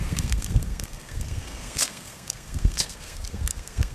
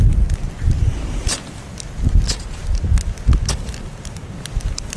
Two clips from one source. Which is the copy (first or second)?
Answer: first